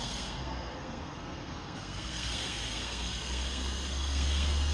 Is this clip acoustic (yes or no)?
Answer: no